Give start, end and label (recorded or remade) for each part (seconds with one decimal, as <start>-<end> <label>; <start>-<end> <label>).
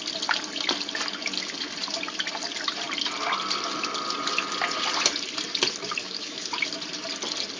0.0-6.0 recorded; 6.0-6.5 remade; 6.5-7.6 recorded